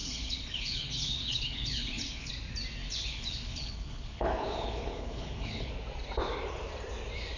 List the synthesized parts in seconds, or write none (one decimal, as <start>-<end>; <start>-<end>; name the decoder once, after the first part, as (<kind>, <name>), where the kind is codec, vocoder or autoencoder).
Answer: 0.0-2.3 (codec, HILCodec); 2.8-5.7